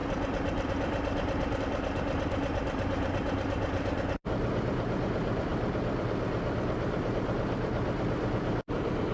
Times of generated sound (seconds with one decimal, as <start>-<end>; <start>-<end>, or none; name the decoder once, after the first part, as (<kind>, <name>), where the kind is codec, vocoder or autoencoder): 0.0-9.1 (vocoder, BigVGAN v2)